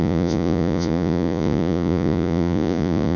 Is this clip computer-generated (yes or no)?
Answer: yes